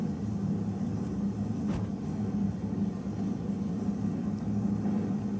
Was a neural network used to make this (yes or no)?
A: no